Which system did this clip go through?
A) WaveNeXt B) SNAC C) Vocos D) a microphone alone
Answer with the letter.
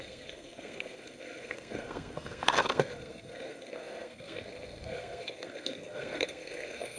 B